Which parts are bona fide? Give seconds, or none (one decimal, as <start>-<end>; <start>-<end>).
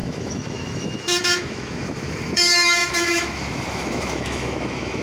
none